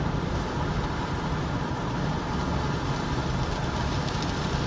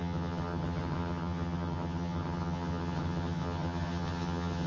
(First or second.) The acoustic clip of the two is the first